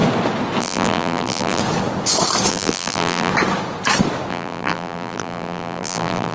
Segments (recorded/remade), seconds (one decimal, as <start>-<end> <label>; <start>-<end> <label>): 0.0-0.6 recorded; 0.6-1.6 remade; 1.6-2.5 recorded; 2.5-3.3 remade; 3.3-4.3 recorded; 4.3-6.3 remade